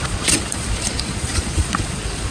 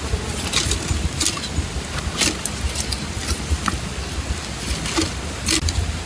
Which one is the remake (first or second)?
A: first